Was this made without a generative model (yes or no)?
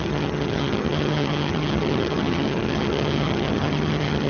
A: no